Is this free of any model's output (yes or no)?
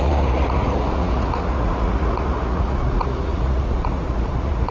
no